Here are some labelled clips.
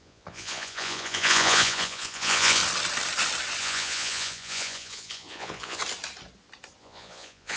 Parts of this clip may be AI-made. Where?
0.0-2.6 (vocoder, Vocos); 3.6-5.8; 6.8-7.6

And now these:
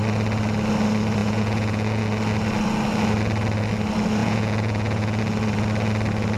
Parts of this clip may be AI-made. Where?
1.2-2.0 (vocoder, Vocos); 4.2-5.2

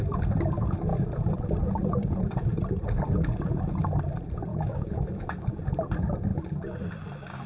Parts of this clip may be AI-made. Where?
4.5-5.6 (autoencoder, DAC-VAE)

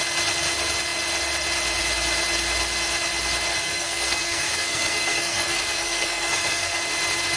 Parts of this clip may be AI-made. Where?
3.5-6.8 (codec, SNAC)

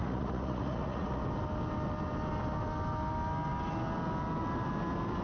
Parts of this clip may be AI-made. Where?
0.0-1.2 (vocoder, Vocos)

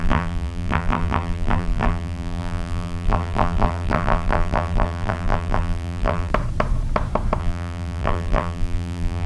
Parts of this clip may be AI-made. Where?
0.0-6.3 (vocoder, BigVGAN v2); 7.4-9.3

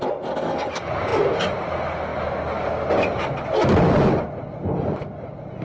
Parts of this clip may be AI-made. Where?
none

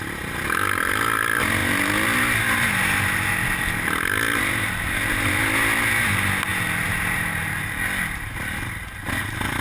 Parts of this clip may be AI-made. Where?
none